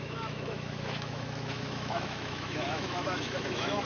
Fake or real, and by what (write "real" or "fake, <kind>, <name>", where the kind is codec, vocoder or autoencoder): fake, autoencoder, DAC-VAE